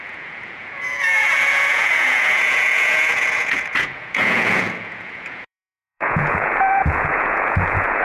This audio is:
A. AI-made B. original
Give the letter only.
A